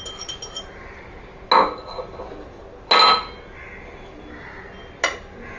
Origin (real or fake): real